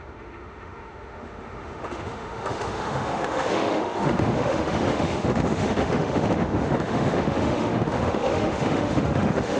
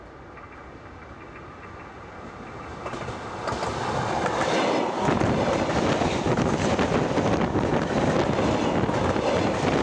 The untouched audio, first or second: second